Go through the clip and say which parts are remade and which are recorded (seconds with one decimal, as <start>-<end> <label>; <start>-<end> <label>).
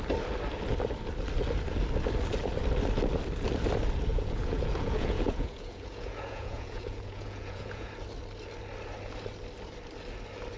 0.0-4.1 recorded; 4.1-7.9 remade; 7.9-10.6 recorded